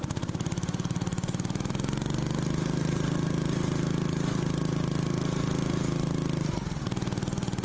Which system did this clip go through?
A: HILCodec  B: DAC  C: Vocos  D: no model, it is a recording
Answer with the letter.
D